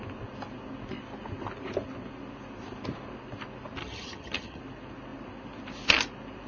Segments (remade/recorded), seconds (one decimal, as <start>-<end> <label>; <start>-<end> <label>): 0.0-3.8 recorded; 3.8-4.6 remade; 4.6-6.5 recorded